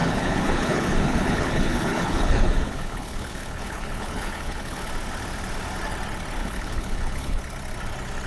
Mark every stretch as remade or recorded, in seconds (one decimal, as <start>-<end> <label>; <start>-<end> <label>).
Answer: 0.0-4.9 remade; 4.9-6.4 recorded; 6.4-7.4 remade; 7.4-8.3 recorded